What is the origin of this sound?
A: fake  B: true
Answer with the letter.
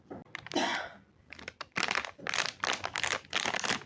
B